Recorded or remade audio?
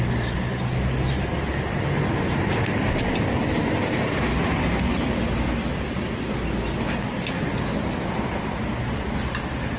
recorded